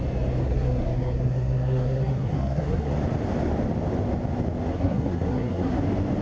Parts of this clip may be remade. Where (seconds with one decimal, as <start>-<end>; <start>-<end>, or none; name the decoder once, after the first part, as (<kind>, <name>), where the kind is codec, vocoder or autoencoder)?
0.4-2.9 (codec, SNAC); 4.7-5.8